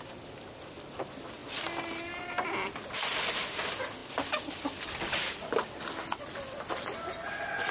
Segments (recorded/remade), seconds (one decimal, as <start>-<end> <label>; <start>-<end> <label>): 0.0-7.7 recorded